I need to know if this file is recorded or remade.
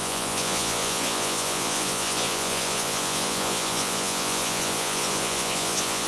remade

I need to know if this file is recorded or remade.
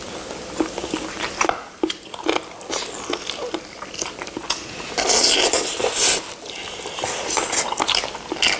recorded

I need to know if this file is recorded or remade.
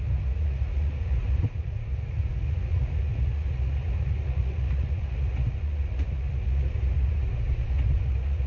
remade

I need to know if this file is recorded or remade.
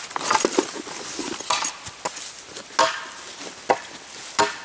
recorded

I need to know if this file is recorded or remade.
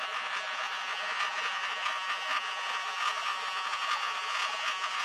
remade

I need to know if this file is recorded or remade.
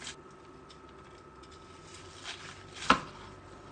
recorded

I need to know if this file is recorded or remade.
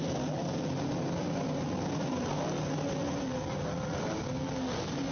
recorded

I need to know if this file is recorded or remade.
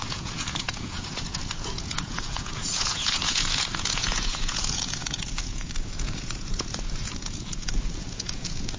remade